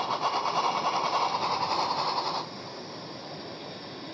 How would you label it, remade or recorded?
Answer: recorded